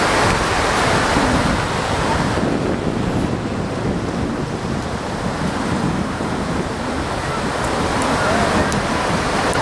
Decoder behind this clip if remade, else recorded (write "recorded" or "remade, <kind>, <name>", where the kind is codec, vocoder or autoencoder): recorded